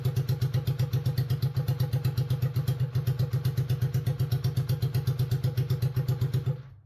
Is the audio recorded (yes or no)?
yes